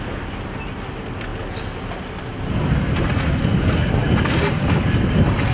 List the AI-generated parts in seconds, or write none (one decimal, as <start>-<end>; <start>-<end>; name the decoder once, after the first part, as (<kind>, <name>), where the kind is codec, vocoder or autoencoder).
none

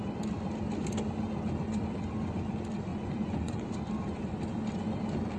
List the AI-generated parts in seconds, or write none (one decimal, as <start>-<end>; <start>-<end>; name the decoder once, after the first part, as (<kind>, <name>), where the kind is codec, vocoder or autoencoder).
2.9-3.6 (vocoder, Vocos)

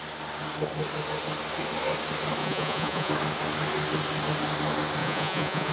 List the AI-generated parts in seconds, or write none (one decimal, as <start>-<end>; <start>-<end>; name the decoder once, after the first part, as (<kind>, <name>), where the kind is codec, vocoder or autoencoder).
2.4-3.1 (vocoder, Vocos); 5.0-5.7

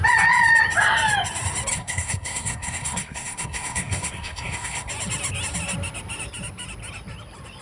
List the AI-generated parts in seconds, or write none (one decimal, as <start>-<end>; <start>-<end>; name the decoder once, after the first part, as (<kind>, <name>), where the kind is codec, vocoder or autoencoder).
1.7-4.9 (codec, SNAC)

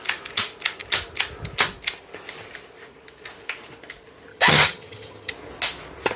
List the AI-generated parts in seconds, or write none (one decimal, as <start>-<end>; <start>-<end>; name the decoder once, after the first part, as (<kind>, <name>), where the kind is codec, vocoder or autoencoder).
4.3-5.3 (vocoder, HiFi-GAN)

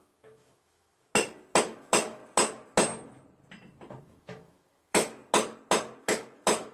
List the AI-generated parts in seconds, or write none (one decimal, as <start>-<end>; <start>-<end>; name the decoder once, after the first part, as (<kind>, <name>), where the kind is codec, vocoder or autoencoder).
0.0-1.1 (autoencoder, DAC-VAE); 1.6-2.2; 4.0-5.2; 6.0-6.7

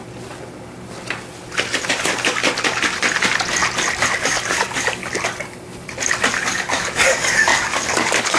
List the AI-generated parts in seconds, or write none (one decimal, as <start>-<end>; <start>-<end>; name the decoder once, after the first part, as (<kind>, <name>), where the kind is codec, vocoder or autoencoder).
1.9-2.4 (codec, DAC); 4.2-5.0; 6.3-8.4

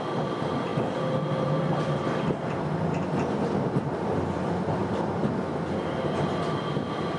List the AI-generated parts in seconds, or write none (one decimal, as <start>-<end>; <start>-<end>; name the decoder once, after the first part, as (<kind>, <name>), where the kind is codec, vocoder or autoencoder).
none